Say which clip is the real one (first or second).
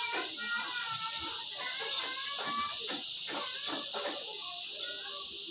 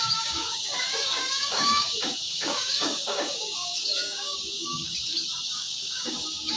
first